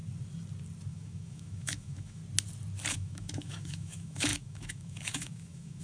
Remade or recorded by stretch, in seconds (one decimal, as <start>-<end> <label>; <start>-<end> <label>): 0.0-0.9 recorded; 0.9-2.2 remade; 2.2-2.9 recorded; 2.9-5.8 remade